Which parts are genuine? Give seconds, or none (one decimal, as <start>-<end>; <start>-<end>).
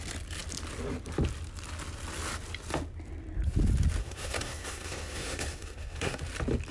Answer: 0.0-4.0; 6.2-6.7